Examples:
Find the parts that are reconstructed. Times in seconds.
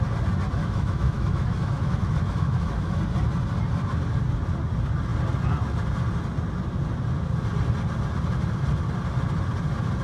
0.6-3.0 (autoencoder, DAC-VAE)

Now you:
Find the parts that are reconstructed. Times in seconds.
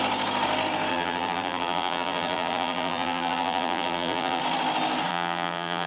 0.9-4.4 (vocoder, BigVGAN v2); 5.1-5.9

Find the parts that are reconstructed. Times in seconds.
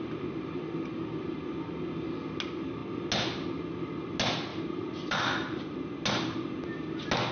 4.5-5.6 (vocoder, BigVGAN v2)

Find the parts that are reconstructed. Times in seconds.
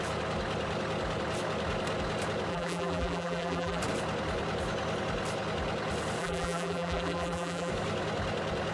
2.5-3.8 (vocoder, BigVGAN v2); 6.2-7.7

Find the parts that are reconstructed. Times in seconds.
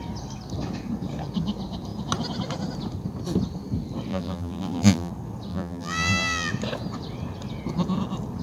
4.1-5.1 (vocoder, BigVGAN v2); 5.5-6.5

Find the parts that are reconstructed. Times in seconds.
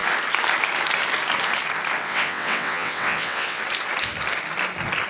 2.0-3.6 (vocoder, WaveNeXt)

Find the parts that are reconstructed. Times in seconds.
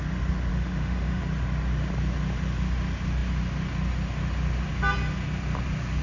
0.5-1.2 (autoencoder, DAC-VAE)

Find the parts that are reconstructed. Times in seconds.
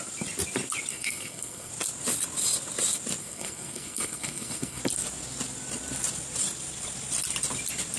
0.9-1.7 (codec, SNAC); 3.2-4.8